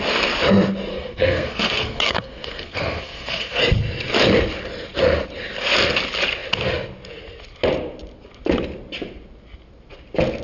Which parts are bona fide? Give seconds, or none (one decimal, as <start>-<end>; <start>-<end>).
0.0-0.9; 3.6-10.4